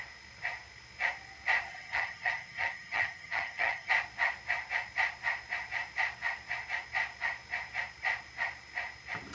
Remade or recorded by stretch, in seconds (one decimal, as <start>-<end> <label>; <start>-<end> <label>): 0.0-1.7 recorded; 1.7-3.9 remade; 3.9-9.3 recorded